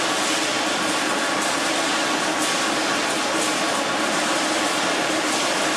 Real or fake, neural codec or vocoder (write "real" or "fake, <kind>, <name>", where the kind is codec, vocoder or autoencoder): real